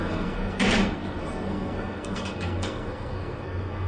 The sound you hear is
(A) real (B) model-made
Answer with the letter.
B